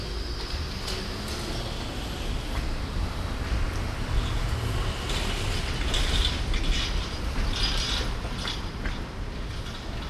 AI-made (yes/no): no